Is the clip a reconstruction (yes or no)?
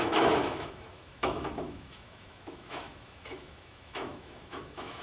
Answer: yes